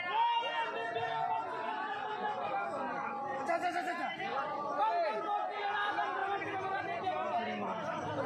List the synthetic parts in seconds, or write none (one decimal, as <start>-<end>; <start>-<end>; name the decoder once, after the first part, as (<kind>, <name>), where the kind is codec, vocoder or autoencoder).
none